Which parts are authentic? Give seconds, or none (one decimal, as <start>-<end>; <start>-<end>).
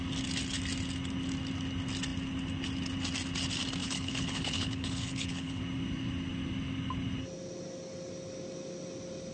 0.0-3.8; 5.6-9.3